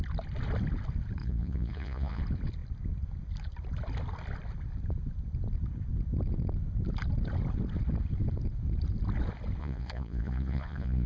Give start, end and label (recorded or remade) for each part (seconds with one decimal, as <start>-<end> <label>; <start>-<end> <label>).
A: 0.0-1.2 recorded; 1.2-2.2 remade; 2.2-9.6 recorded; 9.6-11.1 remade